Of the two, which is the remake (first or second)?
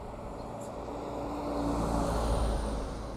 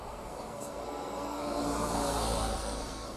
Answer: second